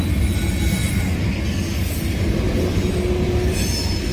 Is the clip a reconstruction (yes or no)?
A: no